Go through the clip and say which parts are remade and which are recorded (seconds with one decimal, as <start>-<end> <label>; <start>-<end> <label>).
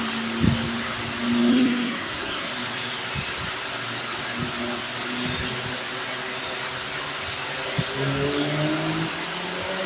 0.0-1.5 recorded; 1.5-2.5 remade; 2.5-9.9 recorded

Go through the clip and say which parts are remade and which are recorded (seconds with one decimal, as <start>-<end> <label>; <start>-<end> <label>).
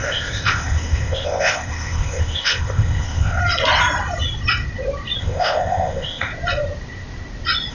0.0-3.4 remade; 3.4-5.2 recorded; 5.2-6.3 remade; 6.3-7.7 recorded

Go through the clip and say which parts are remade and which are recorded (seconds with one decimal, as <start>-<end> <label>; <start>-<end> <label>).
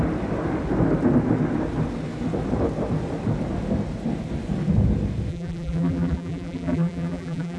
0.0-5.3 recorded; 5.3-7.6 remade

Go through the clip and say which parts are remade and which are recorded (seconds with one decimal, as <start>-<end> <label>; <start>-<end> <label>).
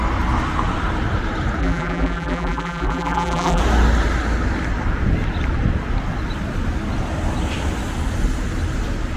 0.0-1.6 recorded; 1.6-3.6 remade; 3.6-9.2 recorded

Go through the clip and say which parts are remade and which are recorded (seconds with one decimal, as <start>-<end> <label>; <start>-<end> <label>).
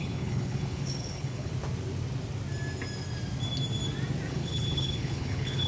0.0-1.5 remade; 1.5-4.3 recorded; 4.3-5.7 remade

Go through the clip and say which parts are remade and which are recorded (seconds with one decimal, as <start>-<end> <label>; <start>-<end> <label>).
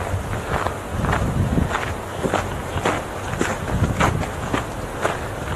0.0-5.6 recorded